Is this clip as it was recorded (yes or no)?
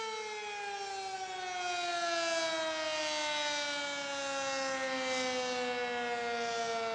yes